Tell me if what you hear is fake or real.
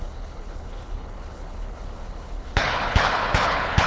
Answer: fake